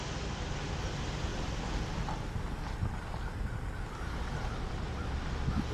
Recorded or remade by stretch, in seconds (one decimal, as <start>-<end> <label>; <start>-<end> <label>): 0.0-5.7 recorded